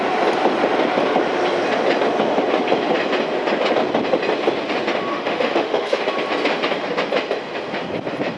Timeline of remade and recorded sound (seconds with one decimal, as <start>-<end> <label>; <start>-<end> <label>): 0.0-5.1 recorded; 5.1-6.0 remade; 6.0-8.4 recorded